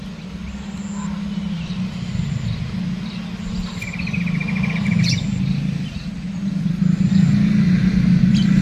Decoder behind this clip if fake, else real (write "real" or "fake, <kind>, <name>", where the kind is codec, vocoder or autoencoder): real